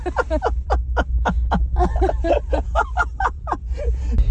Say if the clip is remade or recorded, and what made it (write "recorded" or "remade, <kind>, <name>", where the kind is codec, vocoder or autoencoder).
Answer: recorded